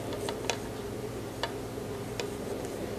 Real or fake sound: real